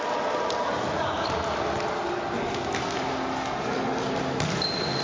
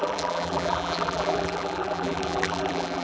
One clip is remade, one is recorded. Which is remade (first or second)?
second